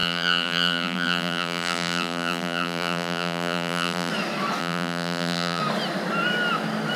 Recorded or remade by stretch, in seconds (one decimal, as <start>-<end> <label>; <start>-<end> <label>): 0.0-4.1 remade; 4.1-4.6 recorded; 4.6-5.6 remade; 5.6-7.0 recorded